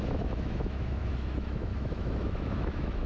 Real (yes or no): no